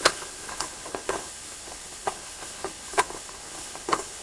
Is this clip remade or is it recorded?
remade